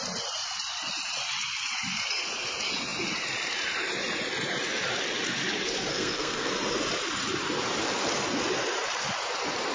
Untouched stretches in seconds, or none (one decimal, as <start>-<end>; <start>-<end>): 0.0-5.9; 6.5-9.7